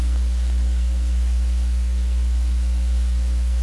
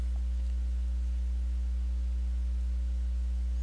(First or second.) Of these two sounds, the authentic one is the second